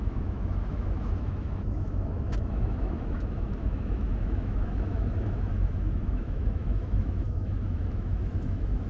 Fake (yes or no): yes